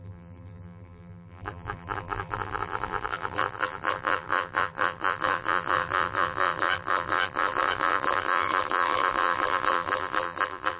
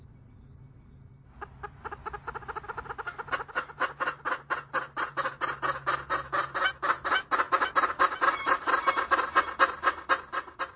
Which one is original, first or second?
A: second